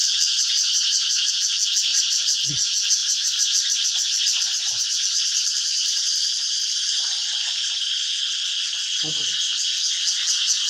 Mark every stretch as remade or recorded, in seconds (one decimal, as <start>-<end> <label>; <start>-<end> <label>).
0.0-1.3 remade; 1.3-1.9 recorded; 1.9-2.5 remade; 2.5-3.0 recorded; 3.0-8.2 remade; 8.2-10.7 recorded